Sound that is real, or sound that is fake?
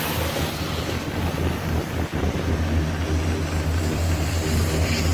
fake